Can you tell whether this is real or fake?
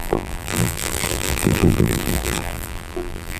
fake